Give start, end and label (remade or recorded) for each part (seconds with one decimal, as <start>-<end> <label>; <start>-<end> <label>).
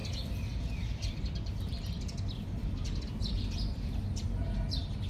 0.0-5.1 recorded